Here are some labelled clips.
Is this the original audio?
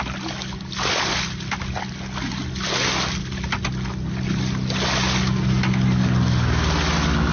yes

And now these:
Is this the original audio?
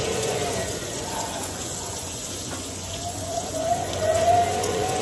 no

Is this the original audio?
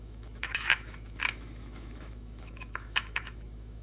no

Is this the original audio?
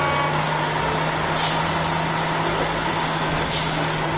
yes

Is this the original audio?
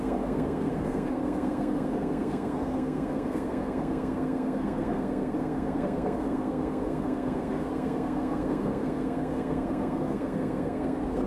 no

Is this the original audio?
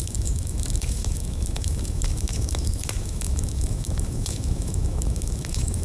no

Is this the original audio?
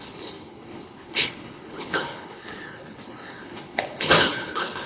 no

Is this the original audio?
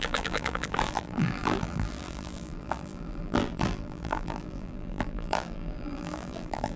no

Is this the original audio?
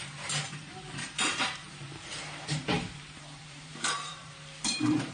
no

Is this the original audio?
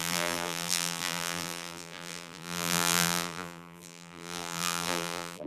no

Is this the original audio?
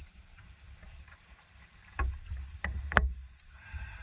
no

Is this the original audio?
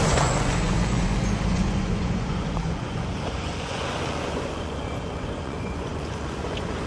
no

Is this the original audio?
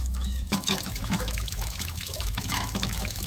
no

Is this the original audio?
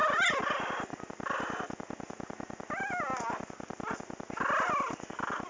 yes